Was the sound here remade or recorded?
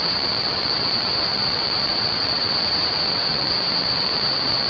remade